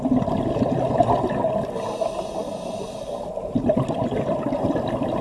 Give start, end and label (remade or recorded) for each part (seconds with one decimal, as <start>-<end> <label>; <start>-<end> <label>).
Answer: 0.0-5.2 recorded